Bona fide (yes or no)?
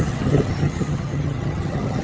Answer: no